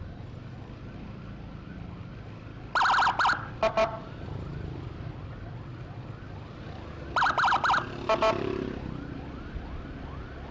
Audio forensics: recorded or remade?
recorded